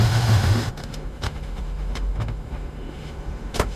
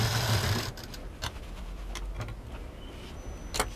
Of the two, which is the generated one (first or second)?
first